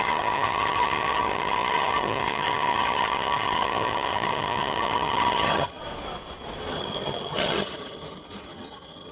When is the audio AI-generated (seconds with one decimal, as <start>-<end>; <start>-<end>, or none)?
0.0-5.8; 6.7-9.1